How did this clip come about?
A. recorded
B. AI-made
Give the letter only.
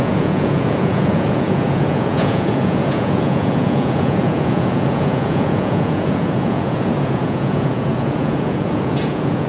B